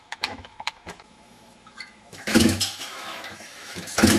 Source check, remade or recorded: remade